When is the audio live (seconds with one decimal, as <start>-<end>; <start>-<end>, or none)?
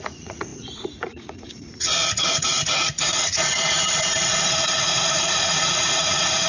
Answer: none